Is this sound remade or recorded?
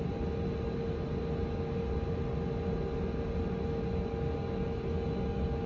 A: recorded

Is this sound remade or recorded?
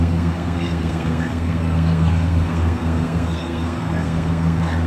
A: remade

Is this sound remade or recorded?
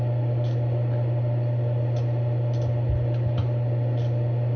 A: recorded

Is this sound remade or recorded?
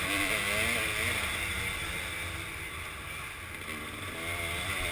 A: recorded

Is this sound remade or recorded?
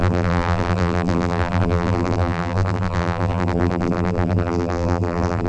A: remade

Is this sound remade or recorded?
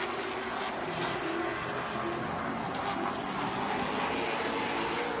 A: recorded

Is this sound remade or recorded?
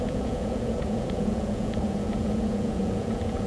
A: remade